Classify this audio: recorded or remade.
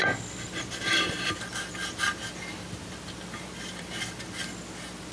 recorded